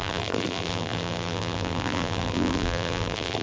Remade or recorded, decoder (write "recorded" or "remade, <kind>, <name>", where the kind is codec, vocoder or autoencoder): remade, vocoder, BigVGAN v2